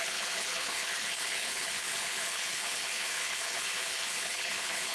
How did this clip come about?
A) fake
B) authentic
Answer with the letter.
A